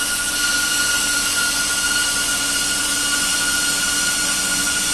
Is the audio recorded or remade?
remade